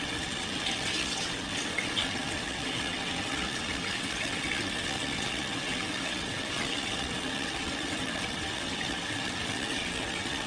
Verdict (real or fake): fake